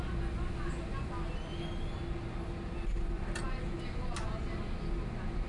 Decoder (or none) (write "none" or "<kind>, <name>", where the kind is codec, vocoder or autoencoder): none